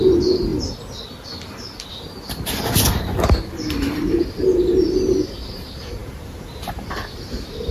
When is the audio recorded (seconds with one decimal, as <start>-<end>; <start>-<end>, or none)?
0.0-6.0; 6.9-7.7